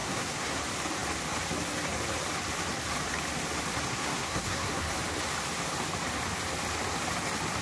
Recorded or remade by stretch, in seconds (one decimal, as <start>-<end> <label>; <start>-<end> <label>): 0.0-0.6 remade; 0.6-3.9 recorded; 3.9-4.9 remade; 4.9-7.6 recorded